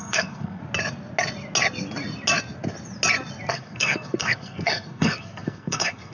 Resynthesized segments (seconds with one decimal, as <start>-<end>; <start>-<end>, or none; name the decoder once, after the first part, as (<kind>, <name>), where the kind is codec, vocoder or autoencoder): 0.0-0.6 (codec, SNAC); 3.5-6.1